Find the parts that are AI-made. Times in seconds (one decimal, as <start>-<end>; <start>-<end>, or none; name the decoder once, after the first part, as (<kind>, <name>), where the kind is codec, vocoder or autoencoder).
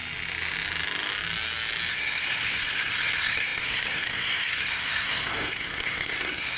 1.9-6.6 (codec, SNAC)